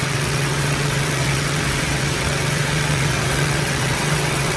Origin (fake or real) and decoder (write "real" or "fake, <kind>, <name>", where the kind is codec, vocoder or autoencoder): fake, vocoder, WaveNeXt